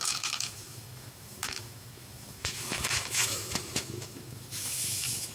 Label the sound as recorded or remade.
remade